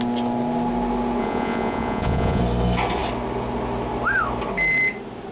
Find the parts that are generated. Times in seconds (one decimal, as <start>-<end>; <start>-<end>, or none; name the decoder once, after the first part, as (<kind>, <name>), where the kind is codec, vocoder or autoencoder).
1.2-2.4 (vocoder, Vocos)